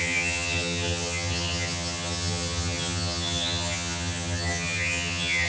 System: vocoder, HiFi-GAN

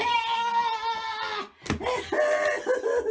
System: none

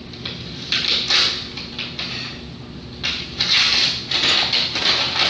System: none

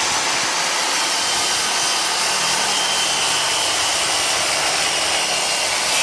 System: none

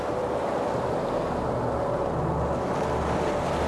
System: none